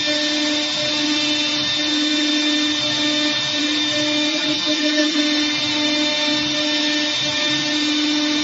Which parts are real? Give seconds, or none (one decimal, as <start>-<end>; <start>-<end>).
0.0-4.3; 5.2-8.4